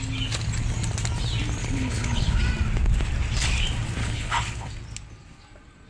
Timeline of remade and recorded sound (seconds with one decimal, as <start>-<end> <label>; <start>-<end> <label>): 0.0-1.6 recorded; 1.6-2.4 remade; 2.4-4.0 recorded; 4.0-4.7 remade; 4.7-5.9 recorded